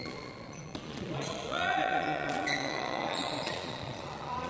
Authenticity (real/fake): fake